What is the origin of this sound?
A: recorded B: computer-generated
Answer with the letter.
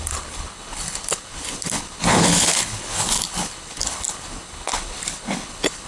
B